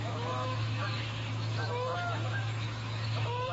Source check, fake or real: fake